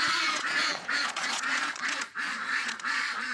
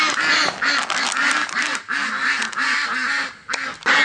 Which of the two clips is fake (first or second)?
first